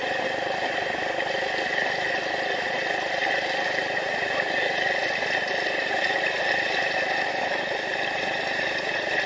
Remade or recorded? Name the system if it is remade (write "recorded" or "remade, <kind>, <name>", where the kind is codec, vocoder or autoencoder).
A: recorded